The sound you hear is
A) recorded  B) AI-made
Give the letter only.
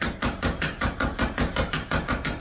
A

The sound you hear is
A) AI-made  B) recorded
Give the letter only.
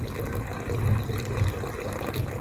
B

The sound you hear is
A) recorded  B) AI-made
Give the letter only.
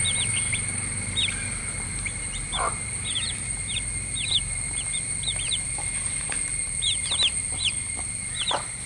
B